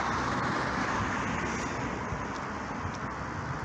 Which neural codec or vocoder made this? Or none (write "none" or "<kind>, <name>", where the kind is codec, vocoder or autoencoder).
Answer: none